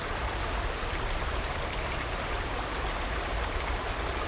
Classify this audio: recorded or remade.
recorded